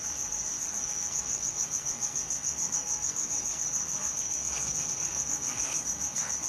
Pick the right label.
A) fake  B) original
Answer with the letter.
A